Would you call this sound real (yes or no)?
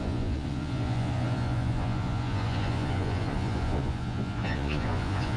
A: no